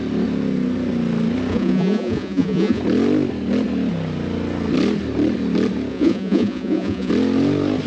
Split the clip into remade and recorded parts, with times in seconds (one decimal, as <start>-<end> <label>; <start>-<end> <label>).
0.0-1.5 recorded; 1.5-2.8 remade; 2.8-5.9 recorded; 5.9-7.1 remade; 7.1-7.9 recorded